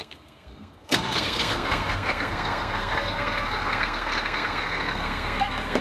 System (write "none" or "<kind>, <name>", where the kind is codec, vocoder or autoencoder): codec, SNAC